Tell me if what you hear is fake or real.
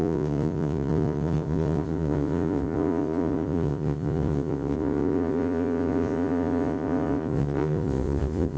fake